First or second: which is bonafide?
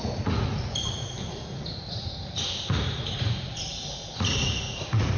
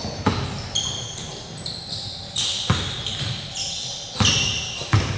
second